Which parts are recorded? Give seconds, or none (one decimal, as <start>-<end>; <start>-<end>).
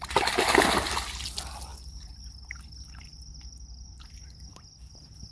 0.0-5.3